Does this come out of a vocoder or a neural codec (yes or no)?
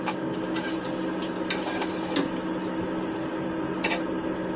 no